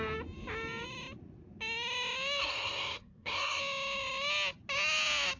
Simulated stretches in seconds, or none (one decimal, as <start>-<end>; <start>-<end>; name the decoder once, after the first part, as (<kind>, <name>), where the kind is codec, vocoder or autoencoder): 2.4-3.6 (codec, SNAC)